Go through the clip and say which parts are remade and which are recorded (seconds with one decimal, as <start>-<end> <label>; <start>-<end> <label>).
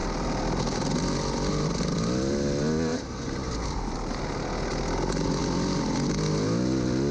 0.0-2.9 recorded; 2.9-4.2 remade; 4.2-7.1 recorded